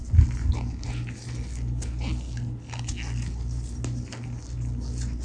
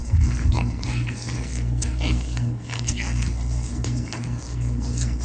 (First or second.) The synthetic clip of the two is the second